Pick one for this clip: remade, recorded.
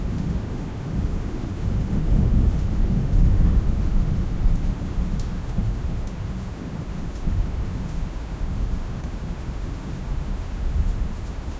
remade